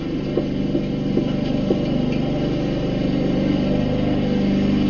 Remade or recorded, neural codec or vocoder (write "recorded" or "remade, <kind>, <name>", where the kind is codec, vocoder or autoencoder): recorded